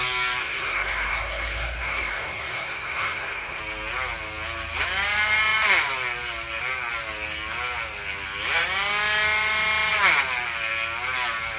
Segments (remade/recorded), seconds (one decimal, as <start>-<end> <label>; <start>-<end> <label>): 0.0-0.4 recorded; 0.4-3.6 remade; 3.6-11.6 recorded

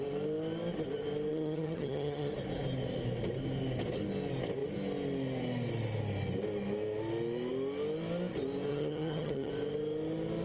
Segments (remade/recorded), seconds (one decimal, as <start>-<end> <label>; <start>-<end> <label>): 0.0-1.3 recorded; 1.3-2.3 remade; 2.3-8.7 recorded; 8.7-9.5 remade; 9.5-10.4 recorded

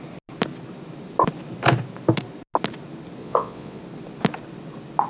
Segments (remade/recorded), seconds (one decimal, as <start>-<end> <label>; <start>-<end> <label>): 0.0-3.2 recorded; 3.2-3.8 remade; 3.8-5.1 recorded

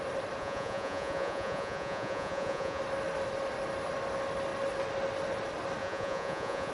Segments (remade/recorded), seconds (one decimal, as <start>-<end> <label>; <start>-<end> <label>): 0.0-0.4 recorded; 0.4-2.8 remade; 2.8-5.8 recorded; 5.8-6.7 remade

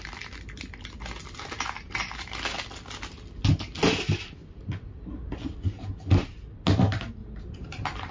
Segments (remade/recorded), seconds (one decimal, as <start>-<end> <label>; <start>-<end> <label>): 0.0-8.1 recorded

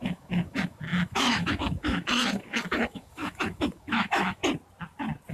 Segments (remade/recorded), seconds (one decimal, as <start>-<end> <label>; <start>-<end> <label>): 0.0-4.4 remade; 4.4-5.3 recorded

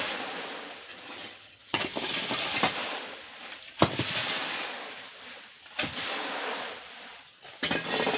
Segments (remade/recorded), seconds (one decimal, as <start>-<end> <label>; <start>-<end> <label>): 0.0-0.9 recorded; 0.9-1.8 remade; 1.8-8.2 recorded